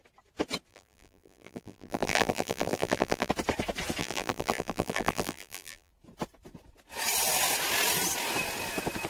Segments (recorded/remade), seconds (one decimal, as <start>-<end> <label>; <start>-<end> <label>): 0.0-0.7 recorded; 0.7-3.3 remade; 3.3-4.0 recorded; 4.0-5.9 remade; 5.9-9.1 recorded